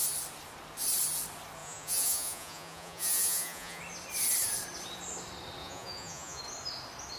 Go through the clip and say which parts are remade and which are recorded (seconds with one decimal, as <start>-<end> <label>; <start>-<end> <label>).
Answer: 0.0-1.6 recorded; 1.6-3.8 remade; 3.8-5.6 recorded; 5.6-6.4 remade; 6.4-7.2 recorded